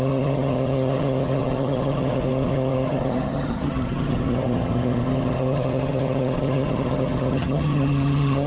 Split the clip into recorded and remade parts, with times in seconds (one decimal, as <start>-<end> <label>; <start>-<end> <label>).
0.0-8.5 remade